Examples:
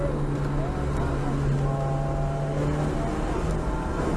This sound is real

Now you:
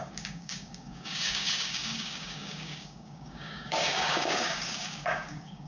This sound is fake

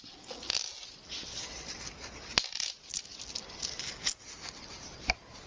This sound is real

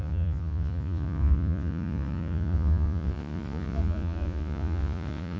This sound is fake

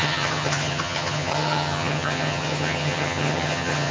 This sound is fake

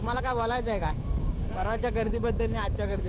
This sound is fake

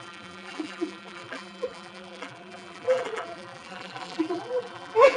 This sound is fake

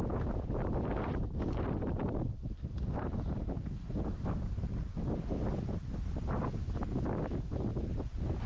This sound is real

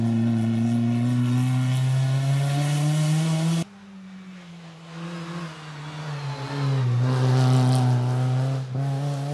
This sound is real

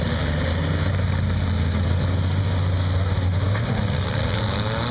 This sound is real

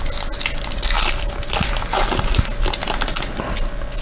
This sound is real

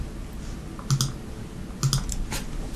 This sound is real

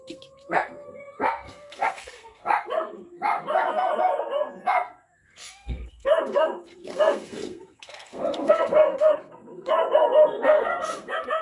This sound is fake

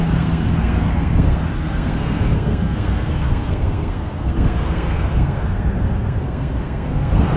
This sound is fake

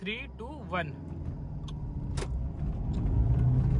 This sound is real